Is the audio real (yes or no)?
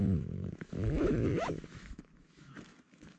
no